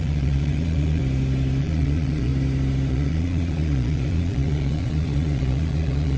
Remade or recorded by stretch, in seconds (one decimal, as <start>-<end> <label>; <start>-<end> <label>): 0.0-1.0 remade; 1.0-1.6 recorded; 1.6-2.3 remade; 2.3-2.9 recorded; 2.9-6.2 remade

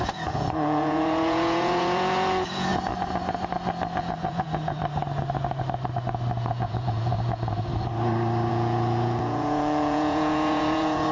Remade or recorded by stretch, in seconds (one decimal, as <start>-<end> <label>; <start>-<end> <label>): 0.0-2.7 remade; 2.7-4.0 recorded; 4.0-4.8 remade; 4.8-6.4 recorded; 6.4-7.7 remade; 7.7-8.5 recorded; 8.5-11.1 remade

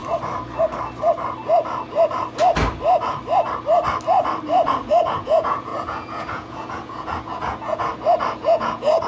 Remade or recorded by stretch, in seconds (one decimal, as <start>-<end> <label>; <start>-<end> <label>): 0.0-5.0 recorded; 5.0-7.9 remade; 7.9-8.4 recorded; 8.4-9.1 remade

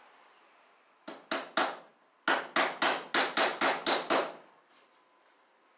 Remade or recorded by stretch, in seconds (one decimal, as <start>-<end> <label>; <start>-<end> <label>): 0.0-5.8 recorded